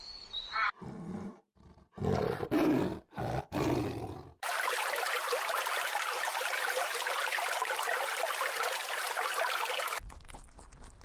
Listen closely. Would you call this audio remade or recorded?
recorded